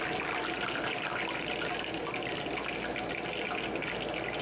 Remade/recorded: recorded